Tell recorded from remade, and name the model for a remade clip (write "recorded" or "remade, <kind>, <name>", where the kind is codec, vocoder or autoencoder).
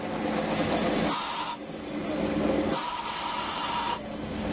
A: recorded